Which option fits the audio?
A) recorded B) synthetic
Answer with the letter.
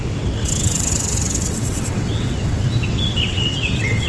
B